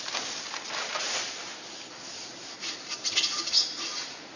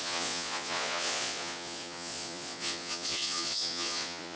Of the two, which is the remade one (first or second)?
second